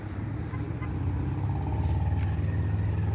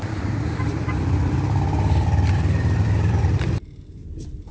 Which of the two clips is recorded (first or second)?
first